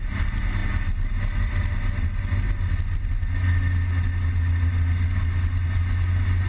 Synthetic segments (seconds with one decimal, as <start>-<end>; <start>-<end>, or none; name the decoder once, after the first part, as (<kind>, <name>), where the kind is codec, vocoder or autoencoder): none